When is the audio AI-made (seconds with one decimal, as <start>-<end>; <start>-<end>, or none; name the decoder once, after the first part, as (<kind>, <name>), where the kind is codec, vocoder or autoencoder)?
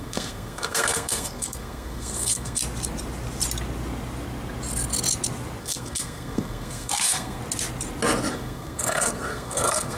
0.0-2.6 (codec, SNAC); 5.6-7.4; 8.3-10.0